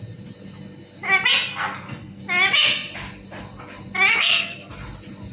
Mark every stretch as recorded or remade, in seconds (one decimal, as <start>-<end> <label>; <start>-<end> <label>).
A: 0.0-1.5 recorded; 1.5-2.2 remade; 2.2-4.1 recorded; 4.1-4.7 remade; 4.7-5.3 recorded